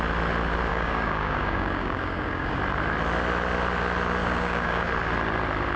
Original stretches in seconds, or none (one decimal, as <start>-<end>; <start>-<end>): 0.0-0.7; 2.6-4.2; 4.9-5.8